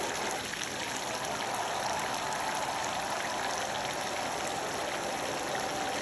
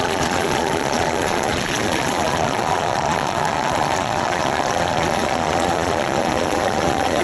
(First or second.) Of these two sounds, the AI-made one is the second